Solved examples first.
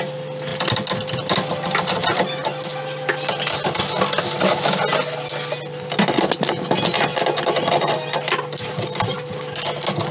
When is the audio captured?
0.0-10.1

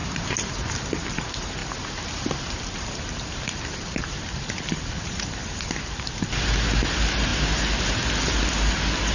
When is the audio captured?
0.0-1.6; 6.3-9.1

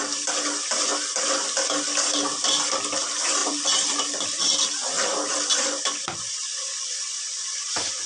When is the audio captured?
0.0-3.4; 4.4-8.1

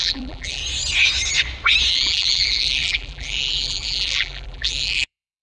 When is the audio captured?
0.6-1.9

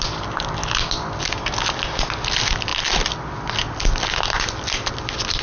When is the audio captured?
0.0-5.4

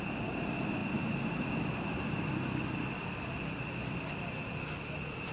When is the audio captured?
0.0-0.8; 2.0-5.3

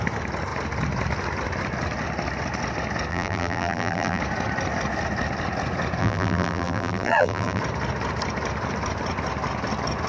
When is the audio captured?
0.0-3.1; 4.2-6.0; 7.6-10.1

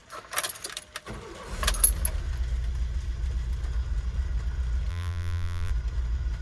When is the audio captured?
0.0-4.9; 5.7-6.4